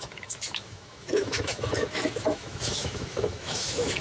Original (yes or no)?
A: no